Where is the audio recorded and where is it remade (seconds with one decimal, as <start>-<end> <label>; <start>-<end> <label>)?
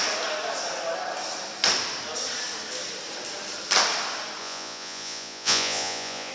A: 0.0-4.4 recorded; 4.4-6.3 remade